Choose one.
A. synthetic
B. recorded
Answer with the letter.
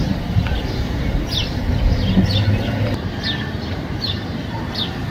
A